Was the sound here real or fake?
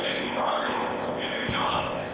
fake